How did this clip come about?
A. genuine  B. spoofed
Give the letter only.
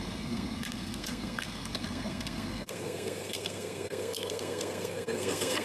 B